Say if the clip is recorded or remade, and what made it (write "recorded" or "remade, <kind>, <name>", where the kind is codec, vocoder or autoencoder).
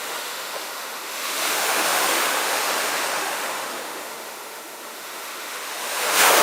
remade, autoencoder, DAC-VAE